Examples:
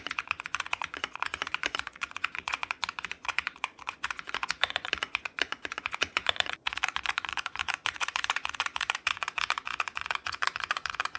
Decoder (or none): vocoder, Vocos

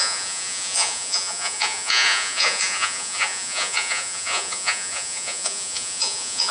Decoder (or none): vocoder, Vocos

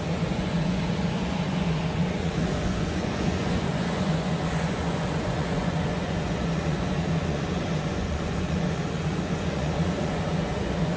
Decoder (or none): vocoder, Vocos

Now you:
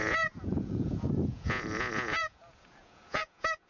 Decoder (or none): vocoder, Vocos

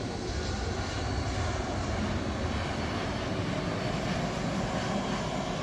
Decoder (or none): none